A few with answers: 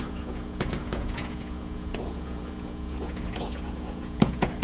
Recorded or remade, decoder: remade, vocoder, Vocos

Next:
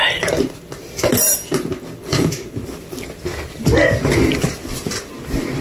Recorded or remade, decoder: recorded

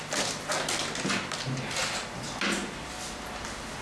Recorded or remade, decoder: recorded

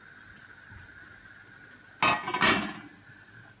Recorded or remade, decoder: recorded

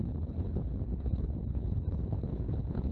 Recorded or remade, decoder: remade, codec, HILCodec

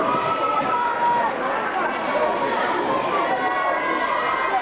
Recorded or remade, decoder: recorded